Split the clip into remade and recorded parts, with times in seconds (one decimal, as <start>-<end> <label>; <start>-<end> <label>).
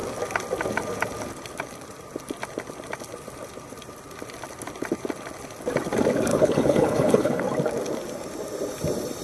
0.0-6.3 recorded; 6.3-7.4 remade; 7.4-9.2 recorded